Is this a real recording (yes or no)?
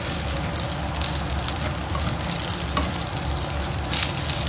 yes